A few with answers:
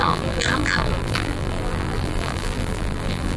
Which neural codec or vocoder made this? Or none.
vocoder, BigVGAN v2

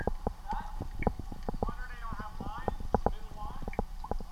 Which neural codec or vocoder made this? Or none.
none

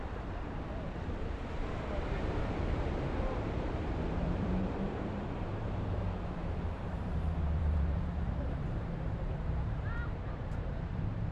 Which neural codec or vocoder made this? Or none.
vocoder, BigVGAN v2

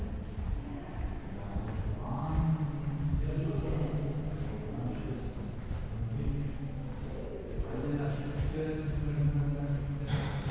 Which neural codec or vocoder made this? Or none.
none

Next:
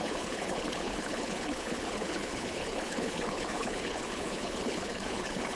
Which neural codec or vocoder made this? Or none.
codec, HILCodec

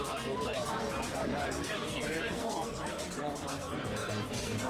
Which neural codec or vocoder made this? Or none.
codec, SNAC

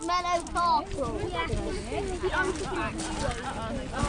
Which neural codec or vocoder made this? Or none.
none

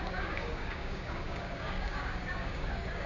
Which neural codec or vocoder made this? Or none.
codec, DAC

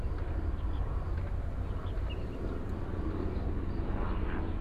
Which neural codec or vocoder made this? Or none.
none